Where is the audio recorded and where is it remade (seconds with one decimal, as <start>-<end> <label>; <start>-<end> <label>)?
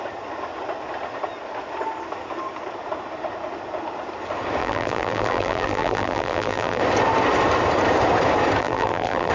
0.0-4.6 recorded; 4.6-6.8 remade; 6.8-8.6 recorded; 8.6-9.3 remade